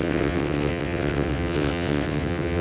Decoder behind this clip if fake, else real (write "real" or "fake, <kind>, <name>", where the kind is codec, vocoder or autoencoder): fake, vocoder, WaveNeXt